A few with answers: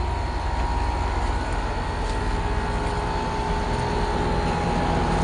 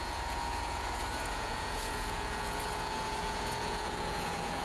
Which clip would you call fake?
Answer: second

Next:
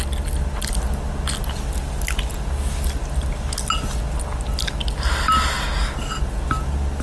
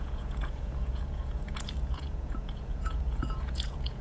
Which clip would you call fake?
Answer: second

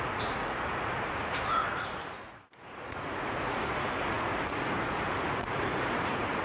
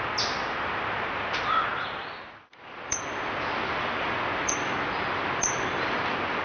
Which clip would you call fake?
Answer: first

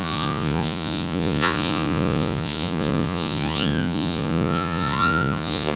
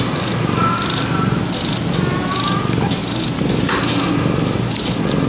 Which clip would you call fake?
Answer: first